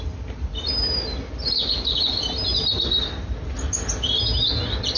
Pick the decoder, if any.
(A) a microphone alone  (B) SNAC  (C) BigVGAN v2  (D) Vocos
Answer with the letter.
A